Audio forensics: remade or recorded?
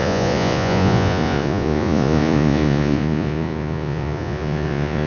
remade